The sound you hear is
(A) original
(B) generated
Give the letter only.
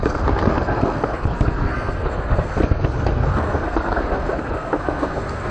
B